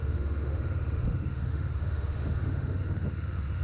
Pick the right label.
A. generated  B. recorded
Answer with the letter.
A